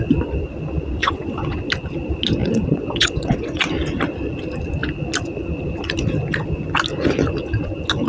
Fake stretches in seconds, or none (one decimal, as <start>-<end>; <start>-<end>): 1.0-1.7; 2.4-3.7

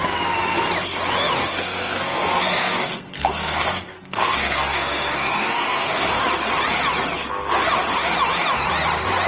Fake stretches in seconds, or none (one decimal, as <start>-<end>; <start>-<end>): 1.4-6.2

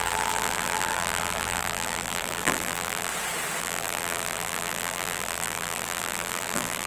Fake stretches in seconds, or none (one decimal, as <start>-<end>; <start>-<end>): 0.0-3.1; 3.6-6.9